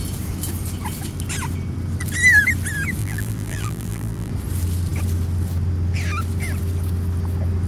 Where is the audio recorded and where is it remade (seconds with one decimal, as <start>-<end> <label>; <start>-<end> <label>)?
0.0-3.0 recorded; 3.0-4.3 remade; 4.3-7.7 recorded